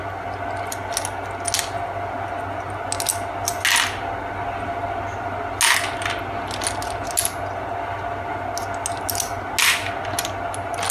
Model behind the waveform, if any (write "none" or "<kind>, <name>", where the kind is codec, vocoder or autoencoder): none